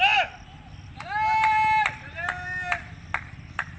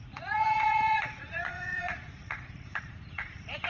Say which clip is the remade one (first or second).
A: second